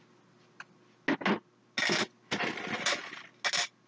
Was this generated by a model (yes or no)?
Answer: no